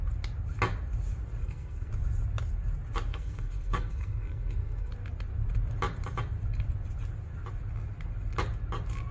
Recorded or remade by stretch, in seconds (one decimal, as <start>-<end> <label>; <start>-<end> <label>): 0.0-1.4 recorded; 1.4-1.9 remade; 1.9-3.1 recorded; 3.1-4.9 remade; 4.9-9.1 recorded